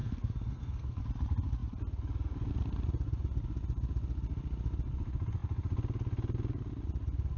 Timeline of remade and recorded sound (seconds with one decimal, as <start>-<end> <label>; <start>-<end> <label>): 0.0-1.0 remade; 1.0-7.4 recorded